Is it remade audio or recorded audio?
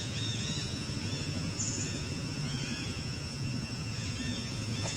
remade